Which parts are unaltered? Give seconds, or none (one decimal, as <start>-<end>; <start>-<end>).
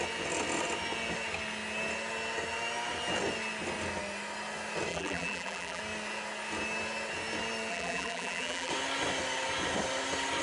0.0-4.9; 5.8-7.7; 8.7-10.4